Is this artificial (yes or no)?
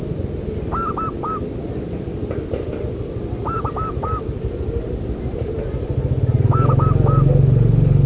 no